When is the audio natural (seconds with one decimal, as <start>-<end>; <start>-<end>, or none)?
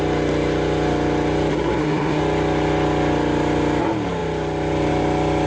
0.0-1.5; 2.2-5.5